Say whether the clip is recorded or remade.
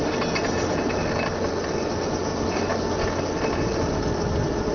recorded